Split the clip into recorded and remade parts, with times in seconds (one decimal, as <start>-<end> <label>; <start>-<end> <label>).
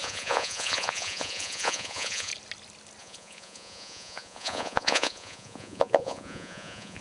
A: 0.0-2.3 remade; 2.3-3.0 recorded; 3.0-7.0 remade